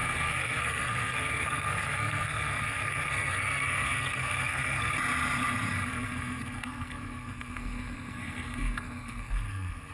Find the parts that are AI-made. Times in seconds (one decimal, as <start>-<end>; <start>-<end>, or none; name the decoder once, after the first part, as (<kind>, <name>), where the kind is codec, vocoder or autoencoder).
0.0-4.9 (codec, SNAC); 5.7-9.9